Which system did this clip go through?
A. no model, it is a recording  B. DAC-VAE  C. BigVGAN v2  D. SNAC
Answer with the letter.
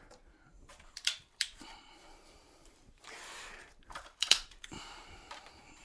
C